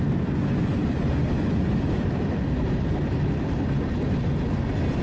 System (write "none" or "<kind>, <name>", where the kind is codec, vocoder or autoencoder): none